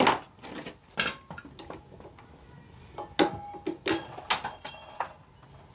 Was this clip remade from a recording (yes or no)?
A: no